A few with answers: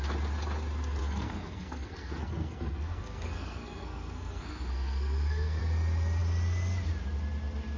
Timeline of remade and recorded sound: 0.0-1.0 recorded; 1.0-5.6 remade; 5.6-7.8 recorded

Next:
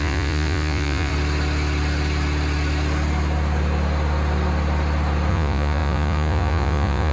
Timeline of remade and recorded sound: 0.0-1.1 remade; 1.1-5.3 recorded; 5.3-7.1 remade

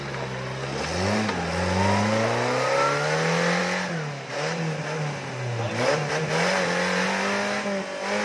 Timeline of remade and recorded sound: 0.0-8.2 recorded

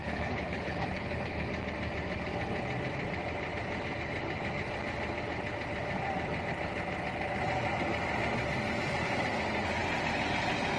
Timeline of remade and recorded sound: 0.0-1.5 remade; 1.5-10.8 recorded

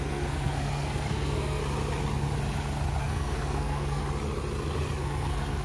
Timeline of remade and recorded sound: 0.0-1.6 remade; 1.6-3.0 recorded; 3.0-4.0 remade; 4.0-5.0 recorded; 5.0-5.6 remade

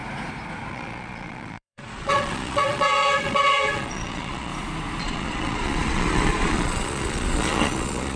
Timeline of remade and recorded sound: 0.0-0.7 recorded; 0.7-4.5 remade; 4.5-5.0 recorded; 5.0-8.2 remade